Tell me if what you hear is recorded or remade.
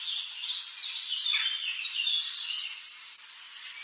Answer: recorded